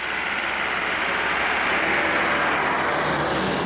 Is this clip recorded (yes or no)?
yes